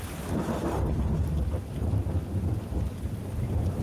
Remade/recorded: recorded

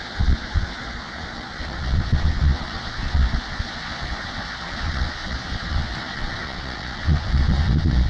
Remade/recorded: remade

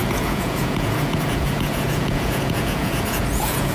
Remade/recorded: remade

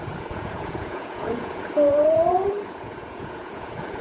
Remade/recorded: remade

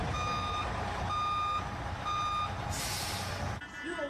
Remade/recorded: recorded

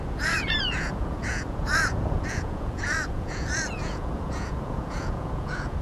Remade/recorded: remade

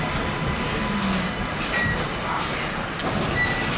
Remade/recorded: recorded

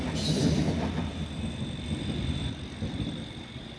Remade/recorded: recorded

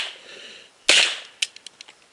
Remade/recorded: recorded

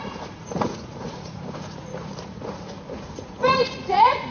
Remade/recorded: remade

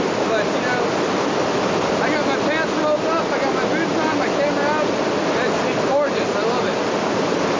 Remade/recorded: recorded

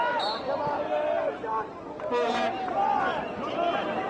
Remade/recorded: recorded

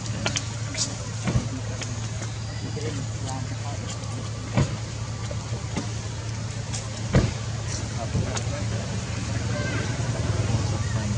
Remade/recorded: recorded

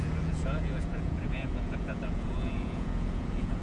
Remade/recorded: remade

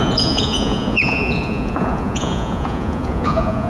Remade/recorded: remade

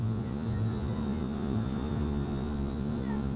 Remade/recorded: remade